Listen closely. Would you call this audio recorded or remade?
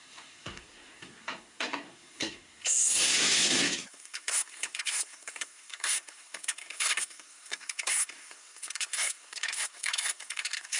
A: remade